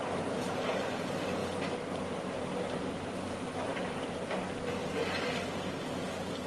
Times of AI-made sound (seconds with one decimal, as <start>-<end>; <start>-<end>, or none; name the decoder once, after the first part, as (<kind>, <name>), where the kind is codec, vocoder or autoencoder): none